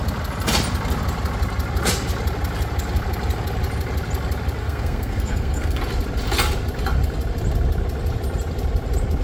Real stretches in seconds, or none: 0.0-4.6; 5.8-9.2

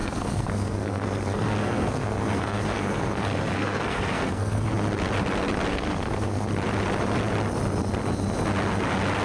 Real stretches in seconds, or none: 4.7-5.7; 6.5-9.2

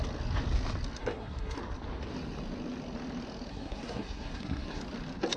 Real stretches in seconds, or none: 0.0-1.0; 1.6-3.5; 4.8-5.4

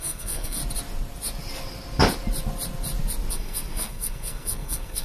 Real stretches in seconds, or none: 0.6-3.3

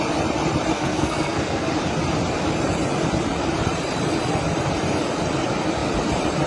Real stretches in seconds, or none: 0.0-0.7; 1.7-6.5

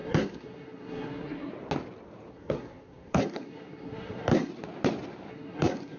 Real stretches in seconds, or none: 1.5-2.3; 4.5-5.3

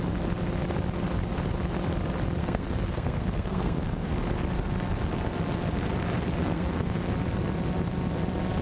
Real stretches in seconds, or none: 0.0-2.4; 4.1-6.4; 7.1-8.6

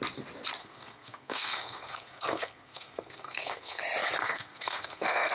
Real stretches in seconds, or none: 0.0-0.6; 3.8-4.2